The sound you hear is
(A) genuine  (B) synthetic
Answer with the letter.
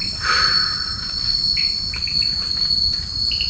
A